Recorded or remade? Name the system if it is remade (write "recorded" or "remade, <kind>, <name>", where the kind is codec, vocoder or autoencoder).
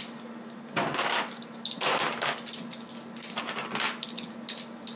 recorded